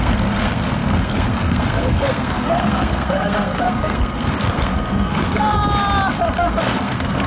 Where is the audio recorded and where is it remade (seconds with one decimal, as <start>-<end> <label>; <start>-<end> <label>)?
0.0-5.6 remade; 5.6-6.3 recorded; 6.3-7.3 remade